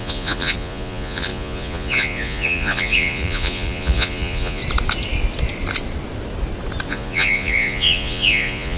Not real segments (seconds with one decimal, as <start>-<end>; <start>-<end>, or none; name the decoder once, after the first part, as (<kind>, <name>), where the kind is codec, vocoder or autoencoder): 0.0-4.6 (vocoder, Vocos); 6.9-8.8